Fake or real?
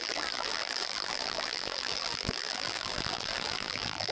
fake